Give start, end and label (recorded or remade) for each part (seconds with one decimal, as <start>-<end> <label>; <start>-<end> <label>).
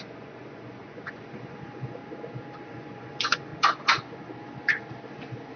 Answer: 0.0-2.0 remade; 2.0-2.7 recorded; 2.7-3.5 remade; 3.5-5.6 recorded